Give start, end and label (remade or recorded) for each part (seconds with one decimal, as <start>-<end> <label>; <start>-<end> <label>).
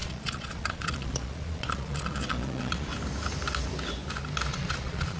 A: 0.0-2.9 remade; 2.9-4.5 recorded; 4.5-5.2 remade